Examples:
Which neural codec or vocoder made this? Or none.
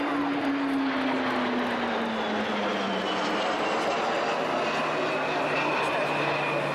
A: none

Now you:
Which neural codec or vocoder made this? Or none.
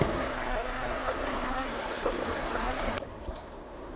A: codec, SNAC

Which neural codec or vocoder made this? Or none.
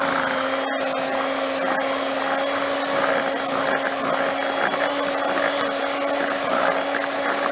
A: none